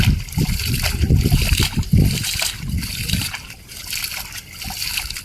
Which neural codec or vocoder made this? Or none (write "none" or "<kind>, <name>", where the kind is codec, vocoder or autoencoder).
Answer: none